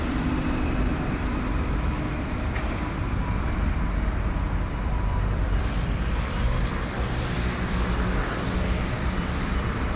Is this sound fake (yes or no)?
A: yes